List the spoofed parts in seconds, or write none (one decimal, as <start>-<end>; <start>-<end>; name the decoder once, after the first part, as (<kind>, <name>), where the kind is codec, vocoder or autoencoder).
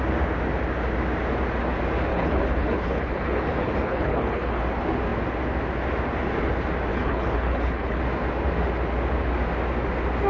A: 2.1-4.6 (codec, HILCodec); 6.9-8.0